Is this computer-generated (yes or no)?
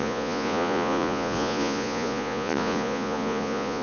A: yes